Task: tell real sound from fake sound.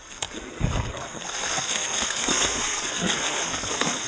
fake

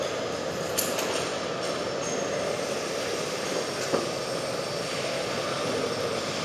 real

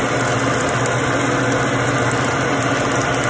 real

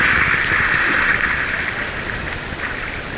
real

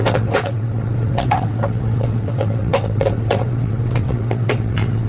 fake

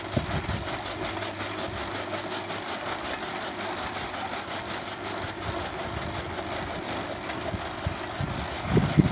real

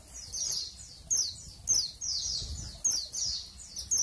real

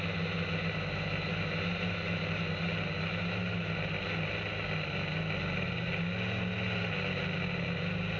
real